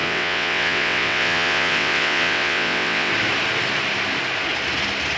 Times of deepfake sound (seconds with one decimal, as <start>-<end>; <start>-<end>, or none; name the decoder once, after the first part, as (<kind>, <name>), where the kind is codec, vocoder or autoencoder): 0.0-3.1 (vocoder, WaveNeXt)